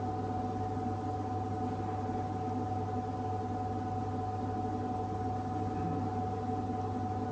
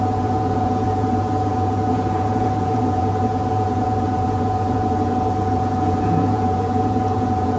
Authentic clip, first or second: first